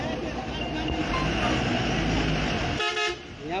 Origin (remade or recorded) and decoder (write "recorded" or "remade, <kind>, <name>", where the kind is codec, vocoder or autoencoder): recorded